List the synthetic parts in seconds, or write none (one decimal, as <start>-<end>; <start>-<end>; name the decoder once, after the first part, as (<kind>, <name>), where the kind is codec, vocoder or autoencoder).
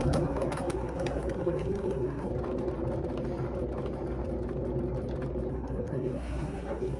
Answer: 0.0-2.3 (codec, SNAC); 5.5-7.0